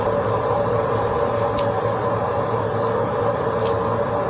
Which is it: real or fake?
real